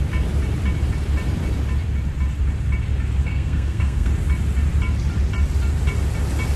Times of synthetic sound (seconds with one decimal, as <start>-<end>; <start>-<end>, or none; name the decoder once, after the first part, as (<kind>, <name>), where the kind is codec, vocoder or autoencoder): 3.2-4.1 (codec, SNAC)